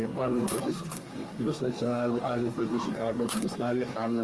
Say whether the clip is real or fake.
fake